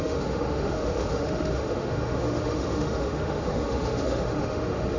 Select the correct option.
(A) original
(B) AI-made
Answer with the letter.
B